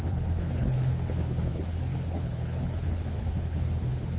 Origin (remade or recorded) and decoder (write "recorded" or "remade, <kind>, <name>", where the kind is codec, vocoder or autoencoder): remade, codec, HILCodec